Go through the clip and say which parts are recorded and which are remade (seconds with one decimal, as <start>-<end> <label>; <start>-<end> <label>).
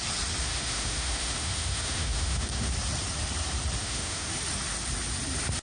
0.0-0.4 recorded; 0.4-2.7 remade; 2.7-3.8 recorded; 3.8-4.3 remade; 4.3-5.6 recorded